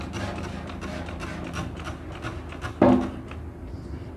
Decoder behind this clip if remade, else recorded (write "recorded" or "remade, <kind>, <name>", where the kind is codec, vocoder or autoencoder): recorded